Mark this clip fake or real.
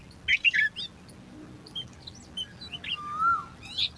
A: real